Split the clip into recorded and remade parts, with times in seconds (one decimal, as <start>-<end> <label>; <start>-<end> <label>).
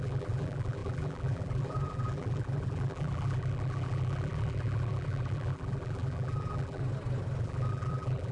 0.0-6.8 remade; 6.8-7.4 recorded; 7.4-8.3 remade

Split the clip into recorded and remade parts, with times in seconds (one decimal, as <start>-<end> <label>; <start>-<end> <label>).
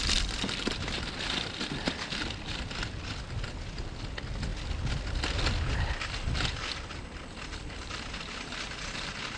0.0-9.4 recorded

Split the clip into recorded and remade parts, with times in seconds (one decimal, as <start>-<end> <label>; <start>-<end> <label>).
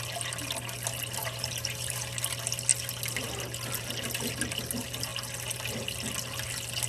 0.0-1.2 recorded; 1.2-2.0 remade; 2.0-6.9 recorded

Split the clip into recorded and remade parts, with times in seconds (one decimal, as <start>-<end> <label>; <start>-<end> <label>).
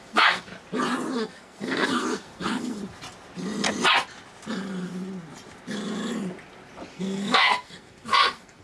0.0-0.5 remade; 0.5-1.1 recorded; 1.1-2.8 remade; 2.8-6.9 recorded; 6.9-8.6 remade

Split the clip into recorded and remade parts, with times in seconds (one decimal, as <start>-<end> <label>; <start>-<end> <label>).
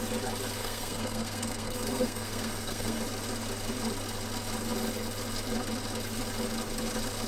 0.0-0.6 recorded; 0.6-3.0 remade; 3.0-7.3 recorded